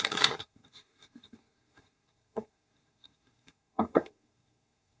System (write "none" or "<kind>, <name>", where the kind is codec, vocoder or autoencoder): codec, SNAC